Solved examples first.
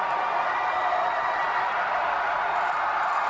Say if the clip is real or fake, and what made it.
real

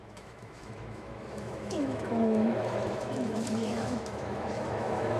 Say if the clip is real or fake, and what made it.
fake, autoencoder, DAC-VAE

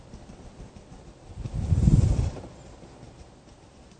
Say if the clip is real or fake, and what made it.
real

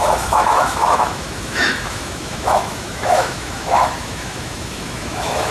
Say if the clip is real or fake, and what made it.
fake, autoencoder, DAC-VAE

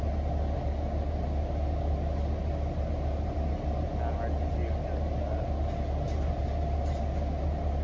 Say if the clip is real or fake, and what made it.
real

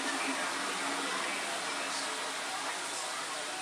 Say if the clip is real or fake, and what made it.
real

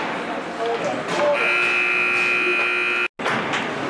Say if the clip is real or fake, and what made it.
real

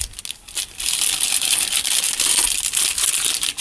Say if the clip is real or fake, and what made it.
real